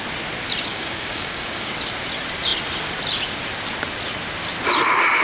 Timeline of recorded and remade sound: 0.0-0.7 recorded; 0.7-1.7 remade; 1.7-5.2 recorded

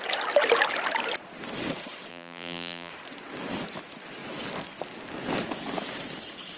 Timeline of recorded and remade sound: 0.0-2.1 recorded; 2.1-2.9 remade; 2.9-6.6 recorded

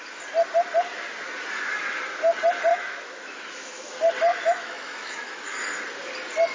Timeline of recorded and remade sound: 0.0-2.7 recorded; 2.7-3.9 remade; 3.9-4.3 recorded; 4.3-5.6 remade; 5.6-6.5 recorded

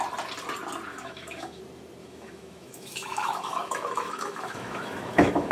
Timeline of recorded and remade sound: 0.0-0.9 recorded; 0.9-1.6 remade; 1.6-2.0 recorded; 2.0-5.5 remade

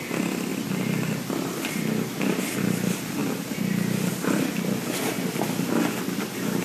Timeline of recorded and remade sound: 0.0-6.6 recorded